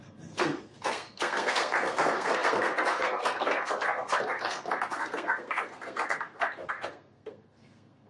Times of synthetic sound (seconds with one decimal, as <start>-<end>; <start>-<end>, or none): 0.0-8.1